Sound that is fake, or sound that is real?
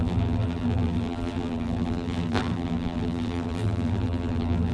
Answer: fake